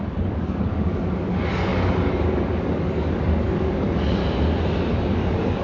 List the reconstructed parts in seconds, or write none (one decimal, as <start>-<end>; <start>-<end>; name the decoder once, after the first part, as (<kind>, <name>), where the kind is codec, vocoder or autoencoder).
0.0-4.2 (codec, DAC); 4.9-5.6